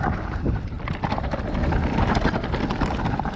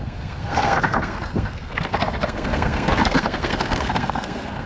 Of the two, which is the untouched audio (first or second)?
first